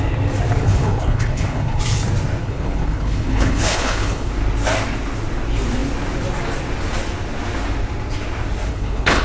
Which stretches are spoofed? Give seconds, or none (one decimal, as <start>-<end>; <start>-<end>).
0.6-1.8; 2.4-4.3; 8.7-9.2